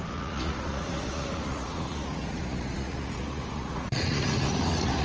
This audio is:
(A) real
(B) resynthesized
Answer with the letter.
B